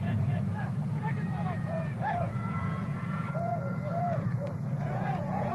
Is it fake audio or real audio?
fake